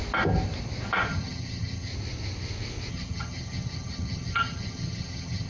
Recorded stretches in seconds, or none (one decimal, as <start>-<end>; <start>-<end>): 0.0-1.1; 1.9-2.9